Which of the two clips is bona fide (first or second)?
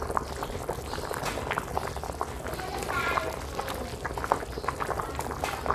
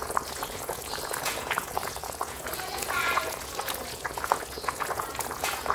first